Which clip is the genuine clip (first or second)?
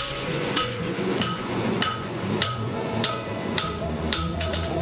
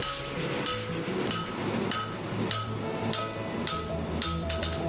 second